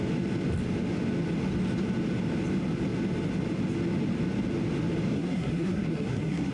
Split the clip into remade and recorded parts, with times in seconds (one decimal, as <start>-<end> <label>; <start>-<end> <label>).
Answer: 0.0-5.1 recorded; 5.1-6.5 remade